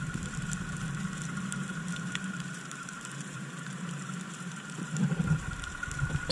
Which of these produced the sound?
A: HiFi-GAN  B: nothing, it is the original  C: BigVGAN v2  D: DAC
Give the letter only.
C